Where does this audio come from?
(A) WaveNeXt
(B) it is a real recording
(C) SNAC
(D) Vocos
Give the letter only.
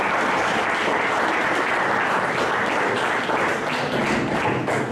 B